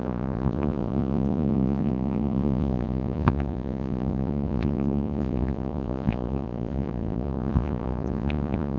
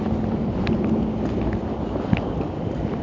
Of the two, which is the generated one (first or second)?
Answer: first